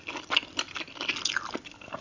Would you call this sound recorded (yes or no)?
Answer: no